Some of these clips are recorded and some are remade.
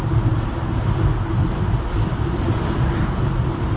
remade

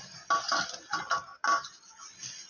recorded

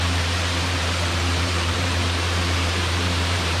remade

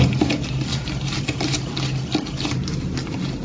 recorded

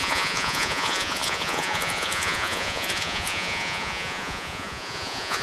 remade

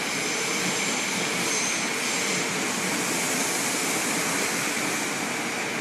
recorded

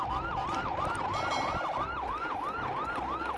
recorded